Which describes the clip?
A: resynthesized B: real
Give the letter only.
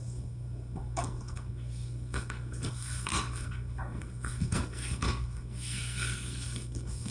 A